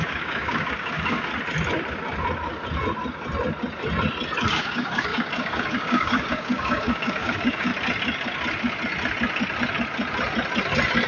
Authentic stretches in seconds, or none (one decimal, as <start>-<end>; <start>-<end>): 1.3-4.5; 7.7-11.1